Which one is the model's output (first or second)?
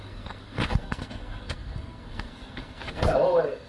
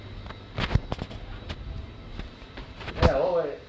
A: first